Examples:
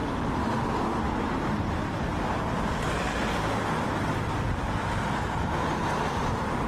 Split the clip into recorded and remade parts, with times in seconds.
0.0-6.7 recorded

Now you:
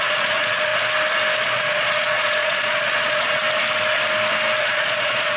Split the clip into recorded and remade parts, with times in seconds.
0.0-0.7 remade; 0.7-1.4 recorded; 1.4-3.4 remade; 3.4-4.6 recorded; 4.6-5.4 remade

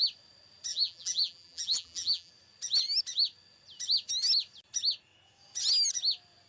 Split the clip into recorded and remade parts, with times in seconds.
0.0-0.7 recorded; 0.7-2.3 remade; 2.3-6.5 recorded